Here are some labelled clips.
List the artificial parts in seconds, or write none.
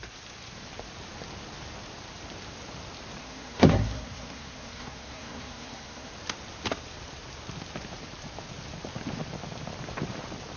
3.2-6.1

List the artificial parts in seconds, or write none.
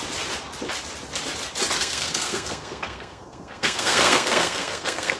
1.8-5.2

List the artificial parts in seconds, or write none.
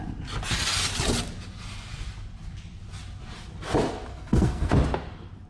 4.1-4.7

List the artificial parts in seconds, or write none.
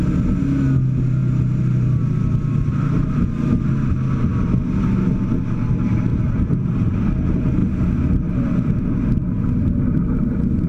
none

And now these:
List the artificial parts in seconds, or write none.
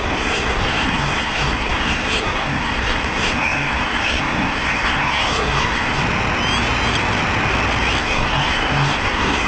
0.0-6.0; 8.0-9.5